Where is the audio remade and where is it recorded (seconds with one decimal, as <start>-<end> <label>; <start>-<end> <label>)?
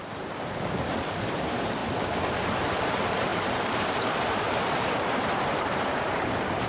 0.0-1.8 remade; 1.8-2.3 recorded; 2.3-6.7 remade